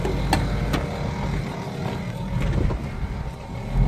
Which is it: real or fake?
real